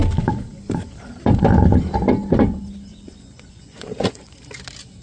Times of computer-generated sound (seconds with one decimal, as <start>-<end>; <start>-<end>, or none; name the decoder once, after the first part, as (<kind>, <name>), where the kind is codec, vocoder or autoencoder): 2.9-4.3 (vocoder, Vocos)

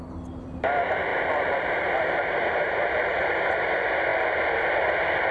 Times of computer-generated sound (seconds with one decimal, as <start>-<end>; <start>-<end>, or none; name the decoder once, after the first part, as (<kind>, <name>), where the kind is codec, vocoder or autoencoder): 1.1-3.5 (vocoder, BigVGAN v2)